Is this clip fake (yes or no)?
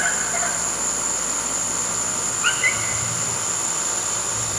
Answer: no